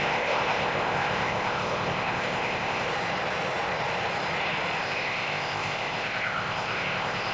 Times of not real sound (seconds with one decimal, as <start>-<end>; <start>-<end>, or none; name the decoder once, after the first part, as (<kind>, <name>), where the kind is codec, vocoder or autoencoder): 0.0-2.9 (codec, ZipCodec); 4.8-7.3